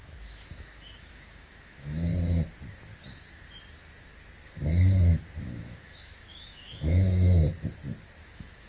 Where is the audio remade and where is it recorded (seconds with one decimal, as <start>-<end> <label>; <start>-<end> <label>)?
0.0-2.1 remade; 2.1-5.4 recorded; 5.4-7.4 remade; 7.4-8.2 recorded; 8.2-8.7 remade